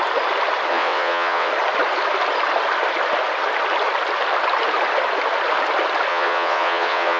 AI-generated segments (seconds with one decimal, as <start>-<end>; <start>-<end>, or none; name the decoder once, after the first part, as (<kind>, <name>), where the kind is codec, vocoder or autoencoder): 0.7-1.5 (vocoder, WaveNeXt); 6.1-7.2